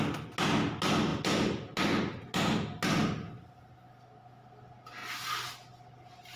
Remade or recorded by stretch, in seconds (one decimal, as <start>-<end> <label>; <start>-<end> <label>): 0.0-6.4 recorded